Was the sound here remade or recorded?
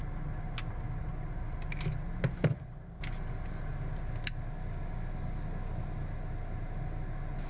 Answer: recorded